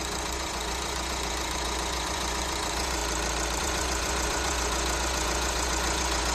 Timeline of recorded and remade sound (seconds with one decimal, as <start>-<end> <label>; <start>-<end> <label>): 0.0-3.0 remade; 3.0-3.6 recorded; 3.6-6.3 remade